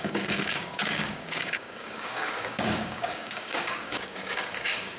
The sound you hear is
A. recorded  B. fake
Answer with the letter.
B